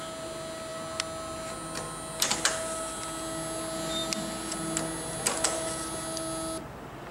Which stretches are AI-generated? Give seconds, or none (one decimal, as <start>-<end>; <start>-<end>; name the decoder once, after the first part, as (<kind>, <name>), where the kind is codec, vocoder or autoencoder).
none

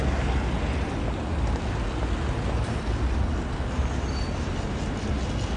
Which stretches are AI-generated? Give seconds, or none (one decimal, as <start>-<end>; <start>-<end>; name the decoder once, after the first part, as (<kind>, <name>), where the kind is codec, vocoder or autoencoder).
none

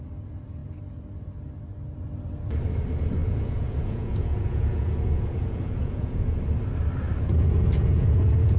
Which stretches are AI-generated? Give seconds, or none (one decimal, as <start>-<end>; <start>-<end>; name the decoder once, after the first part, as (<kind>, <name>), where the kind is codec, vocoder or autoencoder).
3.2-6.4 (vocoder, Vocos); 7.3-8.6

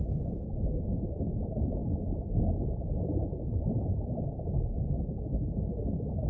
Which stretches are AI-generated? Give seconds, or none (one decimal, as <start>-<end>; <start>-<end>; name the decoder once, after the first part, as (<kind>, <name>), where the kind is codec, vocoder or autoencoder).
none

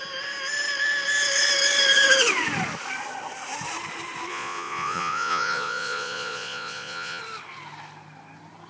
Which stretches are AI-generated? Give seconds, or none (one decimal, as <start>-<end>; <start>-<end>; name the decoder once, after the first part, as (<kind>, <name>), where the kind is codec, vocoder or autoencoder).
4.3-7.2 (vocoder, Vocos)

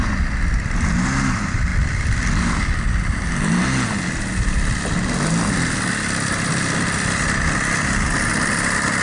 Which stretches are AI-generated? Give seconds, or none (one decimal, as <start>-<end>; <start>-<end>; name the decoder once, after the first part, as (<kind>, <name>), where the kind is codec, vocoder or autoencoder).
none

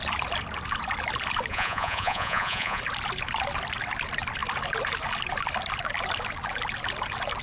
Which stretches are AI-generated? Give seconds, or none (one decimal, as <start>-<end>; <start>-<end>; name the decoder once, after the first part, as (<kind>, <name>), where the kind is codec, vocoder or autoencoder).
1.5-2.8 (vocoder, Vocos)

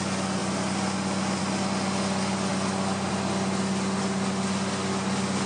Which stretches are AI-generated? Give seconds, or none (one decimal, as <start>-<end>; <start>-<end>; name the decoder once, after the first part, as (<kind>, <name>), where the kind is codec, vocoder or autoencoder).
none